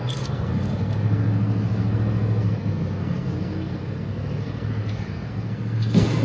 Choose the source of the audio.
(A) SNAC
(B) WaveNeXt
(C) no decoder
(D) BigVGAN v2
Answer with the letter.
A